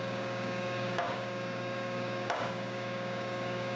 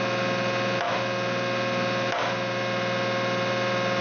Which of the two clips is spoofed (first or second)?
first